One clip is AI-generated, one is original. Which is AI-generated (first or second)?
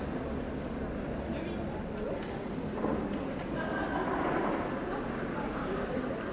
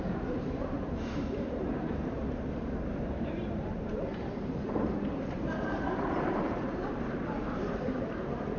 second